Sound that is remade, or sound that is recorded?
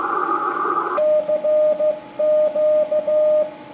recorded